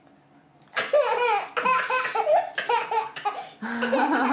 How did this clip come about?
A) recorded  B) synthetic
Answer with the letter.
A